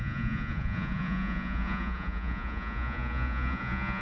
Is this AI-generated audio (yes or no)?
yes